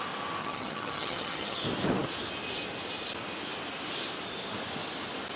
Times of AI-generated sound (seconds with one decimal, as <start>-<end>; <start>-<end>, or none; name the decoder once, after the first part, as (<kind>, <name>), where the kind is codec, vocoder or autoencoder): 0.4-1.6 (vocoder, HiFi-GAN)

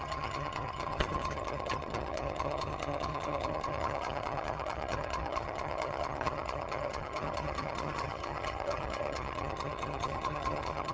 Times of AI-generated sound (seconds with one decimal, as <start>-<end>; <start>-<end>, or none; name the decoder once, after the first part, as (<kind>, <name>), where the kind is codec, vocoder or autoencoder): 0.0-10.9 (vocoder, HiFi-GAN)

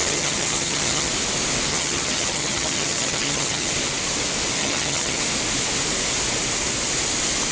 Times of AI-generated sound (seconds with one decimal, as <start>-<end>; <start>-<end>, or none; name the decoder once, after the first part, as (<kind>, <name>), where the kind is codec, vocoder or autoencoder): 0.0-1.1 (vocoder, HiFi-GAN); 1.7-3.7; 4.6-5.2

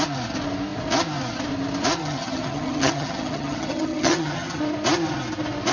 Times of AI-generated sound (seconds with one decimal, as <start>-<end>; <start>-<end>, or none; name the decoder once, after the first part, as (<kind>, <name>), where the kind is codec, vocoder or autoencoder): 2.0-4.6 (vocoder, HiFi-GAN)

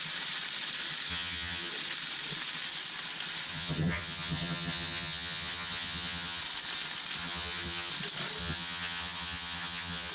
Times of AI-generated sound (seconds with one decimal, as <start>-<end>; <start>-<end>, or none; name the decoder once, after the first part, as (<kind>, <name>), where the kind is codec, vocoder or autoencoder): 1.1-1.7 (vocoder, HiFi-GAN); 3.5-6.4; 7.2-7.9; 8.4-10.1

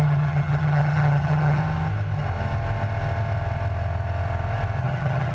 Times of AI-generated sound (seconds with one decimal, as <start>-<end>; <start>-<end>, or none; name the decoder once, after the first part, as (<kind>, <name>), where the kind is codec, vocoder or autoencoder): 0.0-1.6 (vocoder, HiFi-GAN); 4.8-5.3